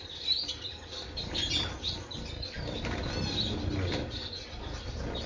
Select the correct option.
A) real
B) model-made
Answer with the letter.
A